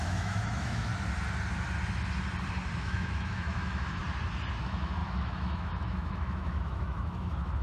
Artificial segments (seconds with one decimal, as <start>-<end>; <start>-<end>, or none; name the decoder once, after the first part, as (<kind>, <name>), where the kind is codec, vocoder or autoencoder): 0.0-0.9 (autoencoder, DAC-VAE); 2.8-4.0; 4.6-7.6